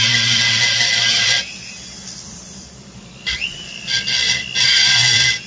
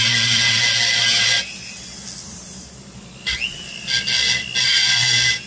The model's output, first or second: first